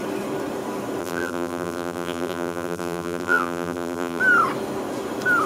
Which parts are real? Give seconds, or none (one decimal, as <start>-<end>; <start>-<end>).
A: 0.0-1.0; 4.2-5.5